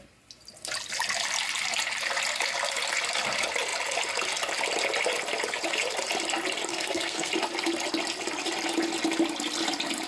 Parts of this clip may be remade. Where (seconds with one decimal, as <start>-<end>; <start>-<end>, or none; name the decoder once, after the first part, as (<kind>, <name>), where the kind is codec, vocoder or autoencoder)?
6.7-7.3 (codec, SNAC)

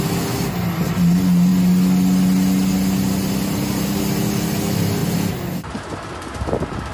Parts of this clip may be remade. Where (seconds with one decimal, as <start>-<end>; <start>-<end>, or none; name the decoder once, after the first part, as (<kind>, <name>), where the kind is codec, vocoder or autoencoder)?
none